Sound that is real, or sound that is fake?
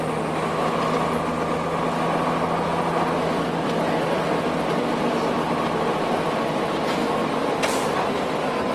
real